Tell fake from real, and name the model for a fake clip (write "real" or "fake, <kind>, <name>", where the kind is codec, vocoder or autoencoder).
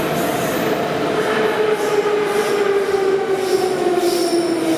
real